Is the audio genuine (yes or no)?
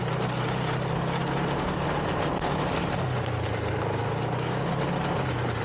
yes